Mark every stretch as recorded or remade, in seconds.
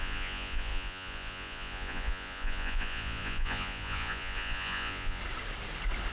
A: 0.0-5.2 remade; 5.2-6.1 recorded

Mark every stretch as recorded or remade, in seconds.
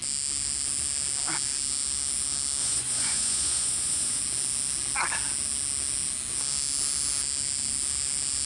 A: 0.0-2.6 recorded; 2.6-4.2 remade; 4.2-8.5 recorded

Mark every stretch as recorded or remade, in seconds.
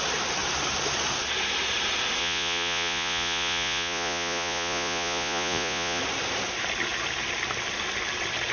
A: 0.0-2.2 recorded; 2.2-6.0 remade; 6.0-8.5 recorded